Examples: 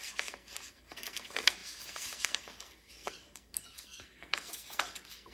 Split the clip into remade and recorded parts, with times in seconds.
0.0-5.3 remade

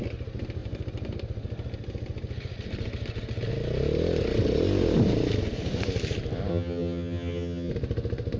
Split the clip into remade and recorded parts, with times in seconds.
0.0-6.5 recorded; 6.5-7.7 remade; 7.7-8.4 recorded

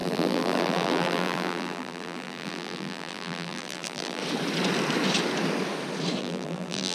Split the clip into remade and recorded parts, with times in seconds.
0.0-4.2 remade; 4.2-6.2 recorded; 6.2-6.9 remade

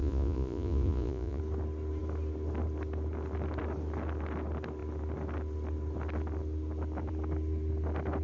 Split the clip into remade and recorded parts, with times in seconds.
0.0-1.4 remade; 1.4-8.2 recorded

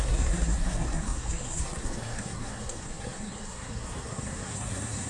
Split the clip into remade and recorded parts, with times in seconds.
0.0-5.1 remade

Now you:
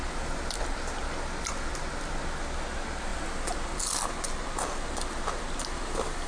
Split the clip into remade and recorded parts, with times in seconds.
0.0-6.3 recorded

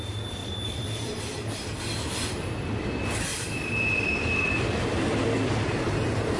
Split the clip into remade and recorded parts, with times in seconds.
0.0-0.4 recorded; 0.4-1.2 remade; 1.2-3.3 recorded; 3.3-6.4 remade

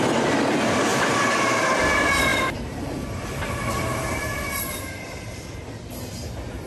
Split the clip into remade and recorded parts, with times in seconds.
0.0-0.9 recorded; 0.9-1.8 remade; 1.8-2.3 recorded; 2.3-6.0 remade; 6.0-6.7 recorded